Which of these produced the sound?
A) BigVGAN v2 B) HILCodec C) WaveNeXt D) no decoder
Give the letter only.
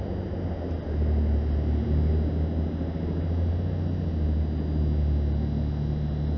D